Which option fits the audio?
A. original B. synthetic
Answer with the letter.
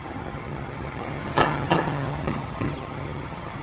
B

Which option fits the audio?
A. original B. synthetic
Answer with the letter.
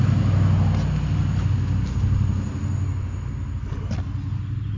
A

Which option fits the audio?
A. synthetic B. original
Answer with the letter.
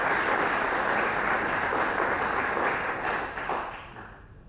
B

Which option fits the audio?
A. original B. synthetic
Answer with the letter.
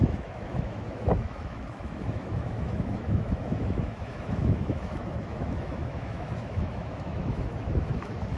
B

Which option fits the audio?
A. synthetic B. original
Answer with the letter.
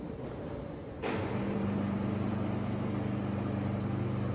B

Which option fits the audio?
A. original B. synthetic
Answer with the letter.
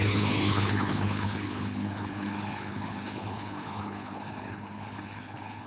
B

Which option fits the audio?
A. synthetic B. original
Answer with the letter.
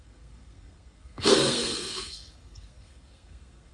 A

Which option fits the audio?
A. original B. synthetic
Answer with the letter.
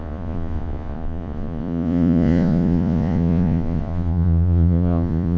B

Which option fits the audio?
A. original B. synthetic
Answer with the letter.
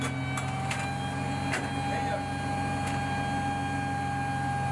A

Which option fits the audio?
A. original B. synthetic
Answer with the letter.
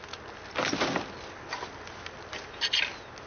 A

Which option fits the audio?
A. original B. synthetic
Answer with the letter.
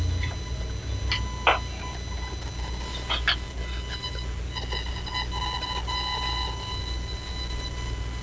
A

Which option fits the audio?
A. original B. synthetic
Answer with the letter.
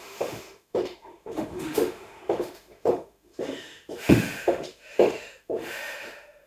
B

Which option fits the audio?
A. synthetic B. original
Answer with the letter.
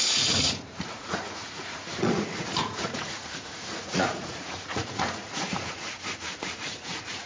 A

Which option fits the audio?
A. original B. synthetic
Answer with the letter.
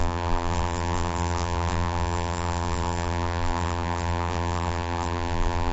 B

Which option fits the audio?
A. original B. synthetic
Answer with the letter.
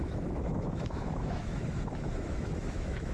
B